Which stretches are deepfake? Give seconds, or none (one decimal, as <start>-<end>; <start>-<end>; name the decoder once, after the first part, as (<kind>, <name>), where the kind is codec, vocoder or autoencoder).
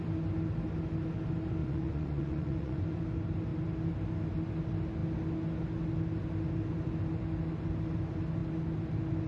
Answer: 1.6-3.0 (vocoder, Vocos)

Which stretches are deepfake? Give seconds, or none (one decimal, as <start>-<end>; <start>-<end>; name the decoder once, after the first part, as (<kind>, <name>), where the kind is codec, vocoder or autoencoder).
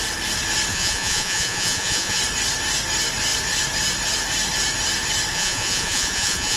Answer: 0.7-2.2 (vocoder, Vocos); 5.3-6.6